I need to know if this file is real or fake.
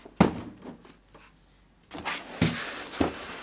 real